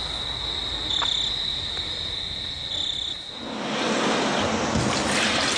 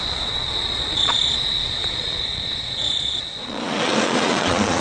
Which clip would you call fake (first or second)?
second